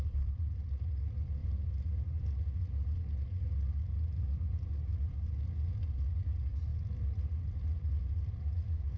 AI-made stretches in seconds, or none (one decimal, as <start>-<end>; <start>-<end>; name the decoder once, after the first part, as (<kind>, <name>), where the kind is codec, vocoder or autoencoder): none